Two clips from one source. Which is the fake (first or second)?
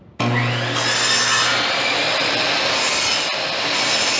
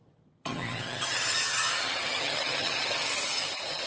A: second